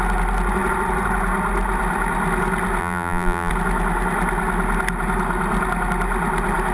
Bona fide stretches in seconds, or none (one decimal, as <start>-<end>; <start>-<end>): 0.0-2.8; 3.5-6.7